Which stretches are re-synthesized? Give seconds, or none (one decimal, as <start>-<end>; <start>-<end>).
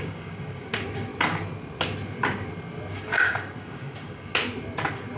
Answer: 0.0-1.1; 2.9-4.3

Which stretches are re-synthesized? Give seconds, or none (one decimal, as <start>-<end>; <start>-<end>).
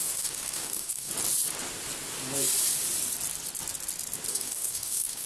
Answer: 0.0-1.1; 4.3-5.3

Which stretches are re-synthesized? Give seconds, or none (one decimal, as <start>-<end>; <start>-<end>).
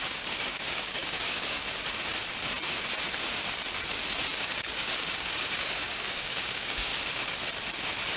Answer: 0.0-1.6; 4.4-6.9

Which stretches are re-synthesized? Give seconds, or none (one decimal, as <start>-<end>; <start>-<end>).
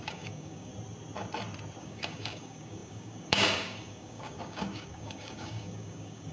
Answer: 0.0-0.7; 1.8-6.3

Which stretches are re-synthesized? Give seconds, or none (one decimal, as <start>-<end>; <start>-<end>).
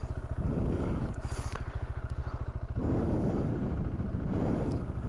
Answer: 0.0-2.2; 3.0-3.5; 4.5-5.1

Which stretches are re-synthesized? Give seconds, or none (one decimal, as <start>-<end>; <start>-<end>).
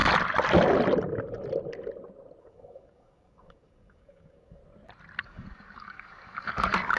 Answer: 2.4-4.6; 5.2-7.0